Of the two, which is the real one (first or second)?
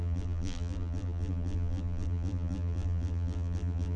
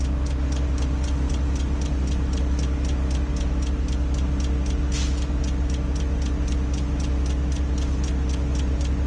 second